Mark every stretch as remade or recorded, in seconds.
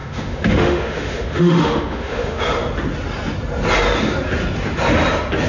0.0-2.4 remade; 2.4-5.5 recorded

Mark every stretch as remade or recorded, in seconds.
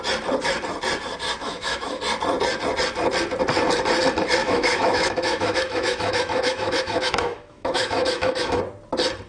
0.0-1.4 recorded; 1.4-2.0 remade; 2.0-4.4 recorded; 4.4-8.6 remade; 8.6-9.3 recorded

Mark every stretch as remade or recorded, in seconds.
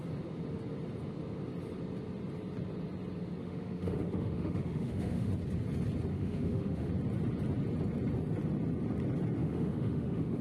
0.0-3.4 recorded; 3.4-5.3 remade; 5.3-6.1 recorded; 6.1-6.9 remade; 6.9-9.4 recorded; 9.4-10.4 remade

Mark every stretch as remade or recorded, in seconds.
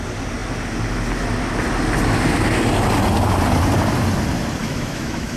0.0-4.6 recorded; 4.6-5.4 remade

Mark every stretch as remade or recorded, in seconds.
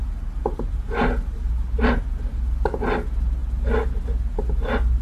0.0-5.0 recorded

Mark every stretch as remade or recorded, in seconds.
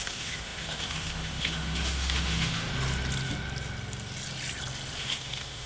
0.0-2.7 remade; 2.7-5.0 recorded; 5.0-5.7 remade